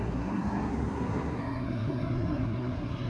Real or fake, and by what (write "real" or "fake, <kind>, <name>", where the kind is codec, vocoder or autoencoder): fake, codec, SNAC